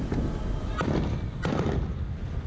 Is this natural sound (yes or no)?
yes